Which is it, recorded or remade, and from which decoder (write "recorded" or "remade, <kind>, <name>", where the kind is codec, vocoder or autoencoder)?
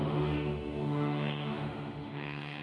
remade, autoencoder, DAC-VAE